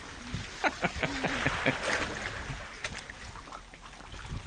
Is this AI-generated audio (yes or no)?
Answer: no